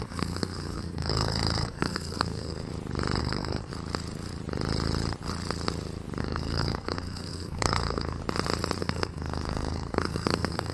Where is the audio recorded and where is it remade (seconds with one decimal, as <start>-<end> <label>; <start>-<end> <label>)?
0.0-2.7 remade; 2.7-3.2 recorded; 3.2-3.7 remade; 3.7-6.2 recorded; 6.2-8.2 remade; 8.2-8.8 recorded; 8.8-10.7 remade